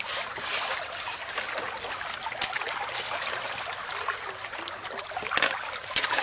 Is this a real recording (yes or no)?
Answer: yes